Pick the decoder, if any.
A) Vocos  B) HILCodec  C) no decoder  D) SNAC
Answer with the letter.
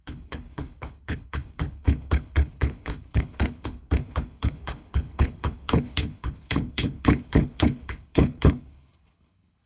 B